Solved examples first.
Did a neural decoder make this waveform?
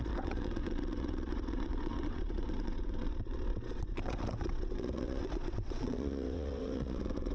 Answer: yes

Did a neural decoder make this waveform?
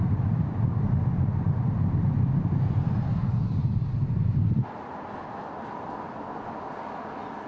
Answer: no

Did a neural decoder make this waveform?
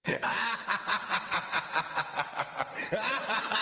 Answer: yes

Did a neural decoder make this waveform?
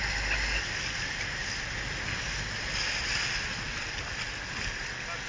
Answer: no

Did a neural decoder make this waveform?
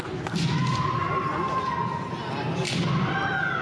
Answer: no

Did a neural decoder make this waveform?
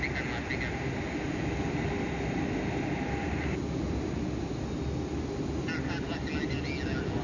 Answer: no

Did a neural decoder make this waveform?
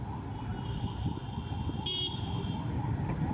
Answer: no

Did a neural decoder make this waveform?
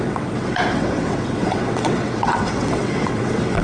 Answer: yes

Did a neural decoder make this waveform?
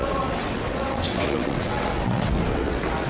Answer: yes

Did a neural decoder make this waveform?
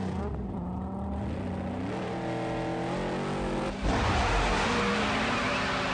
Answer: no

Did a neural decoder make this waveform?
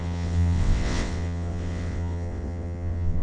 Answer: yes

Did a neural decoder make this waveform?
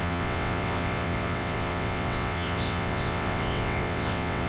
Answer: yes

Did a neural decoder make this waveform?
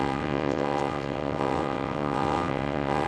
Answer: yes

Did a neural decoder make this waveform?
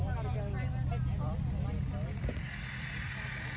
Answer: no